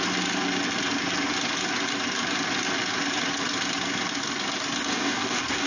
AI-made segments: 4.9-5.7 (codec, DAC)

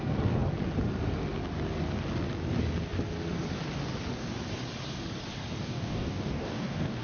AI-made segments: 5.6-7.0 (codec, DAC)

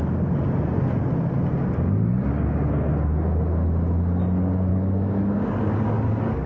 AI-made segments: 4.7-6.5 (codec, DAC)